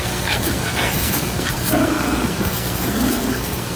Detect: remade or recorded remade